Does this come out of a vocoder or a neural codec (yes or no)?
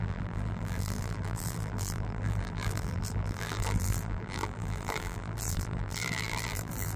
yes